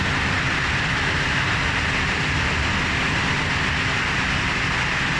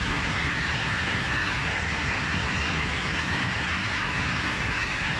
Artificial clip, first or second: second